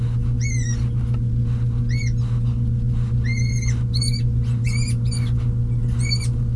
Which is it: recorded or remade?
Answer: recorded